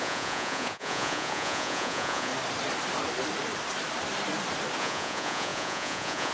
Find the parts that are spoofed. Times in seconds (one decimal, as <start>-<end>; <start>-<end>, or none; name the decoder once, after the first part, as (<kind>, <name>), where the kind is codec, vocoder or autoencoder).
0.0-2.3 (vocoder, Vocos); 4.8-6.3